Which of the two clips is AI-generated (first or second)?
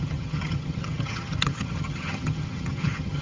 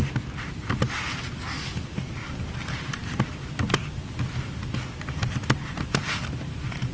first